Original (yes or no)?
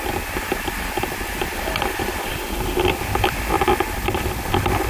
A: yes